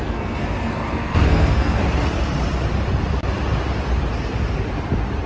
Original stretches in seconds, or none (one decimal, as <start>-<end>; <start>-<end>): 1.8-5.3